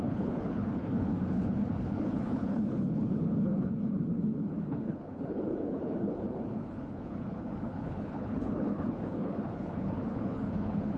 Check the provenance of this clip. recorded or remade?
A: remade